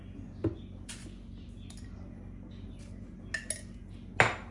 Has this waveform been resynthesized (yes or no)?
no